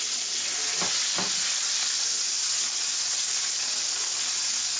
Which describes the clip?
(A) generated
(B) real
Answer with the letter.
B